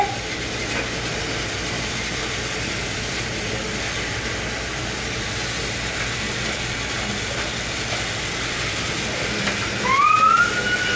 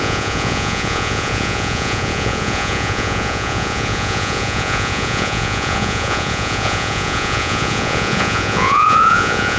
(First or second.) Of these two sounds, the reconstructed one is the second